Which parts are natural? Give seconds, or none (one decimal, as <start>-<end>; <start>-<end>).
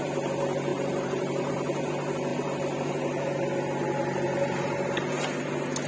0.0-0.7; 1.5-5.9